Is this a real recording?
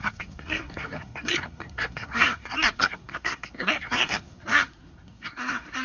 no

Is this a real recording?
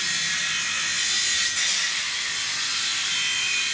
yes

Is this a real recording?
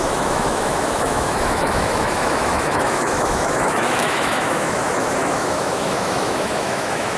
no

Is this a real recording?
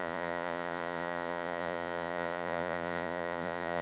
no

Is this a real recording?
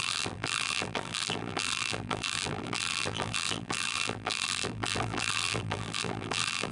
no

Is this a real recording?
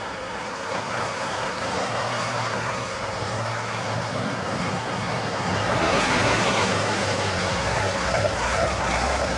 no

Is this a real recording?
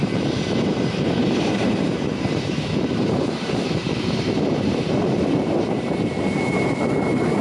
no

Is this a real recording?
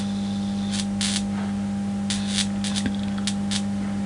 yes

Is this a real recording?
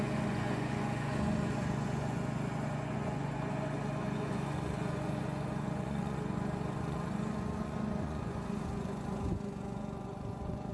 no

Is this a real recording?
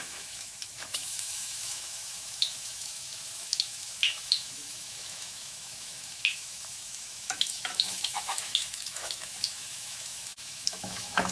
no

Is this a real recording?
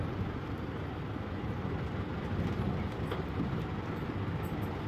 yes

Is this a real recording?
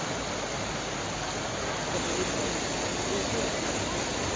yes